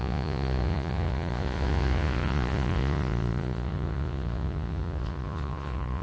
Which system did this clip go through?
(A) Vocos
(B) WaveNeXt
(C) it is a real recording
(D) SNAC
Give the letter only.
A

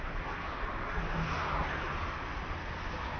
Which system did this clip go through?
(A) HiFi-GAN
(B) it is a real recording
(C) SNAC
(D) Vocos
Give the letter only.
B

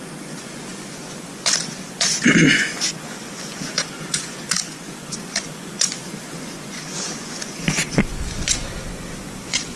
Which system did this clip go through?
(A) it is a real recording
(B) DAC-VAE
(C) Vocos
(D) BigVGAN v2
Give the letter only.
C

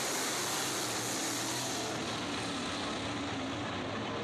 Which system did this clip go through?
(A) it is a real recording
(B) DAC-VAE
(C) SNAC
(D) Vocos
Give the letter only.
A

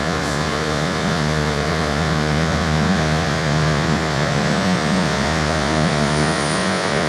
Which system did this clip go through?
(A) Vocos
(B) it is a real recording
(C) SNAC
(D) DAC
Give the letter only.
A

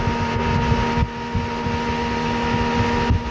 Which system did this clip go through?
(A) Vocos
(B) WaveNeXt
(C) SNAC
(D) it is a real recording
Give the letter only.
D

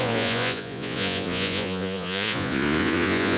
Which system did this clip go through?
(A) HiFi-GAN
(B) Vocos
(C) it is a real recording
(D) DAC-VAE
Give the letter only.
B